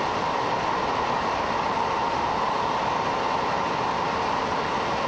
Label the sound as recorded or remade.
remade